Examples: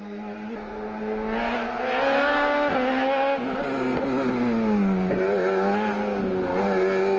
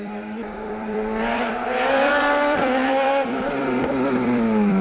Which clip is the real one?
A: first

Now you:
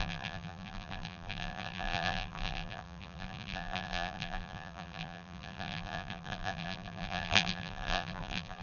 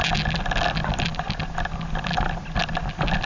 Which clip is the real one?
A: second